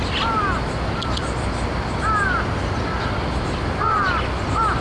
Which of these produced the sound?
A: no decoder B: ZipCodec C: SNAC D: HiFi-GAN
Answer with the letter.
A